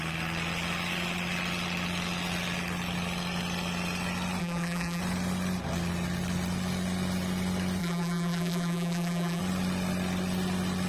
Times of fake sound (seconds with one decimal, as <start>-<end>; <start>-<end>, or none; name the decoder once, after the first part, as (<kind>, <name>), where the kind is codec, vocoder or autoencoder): 4.4-5.0 (vocoder, BigVGAN v2); 7.8-9.4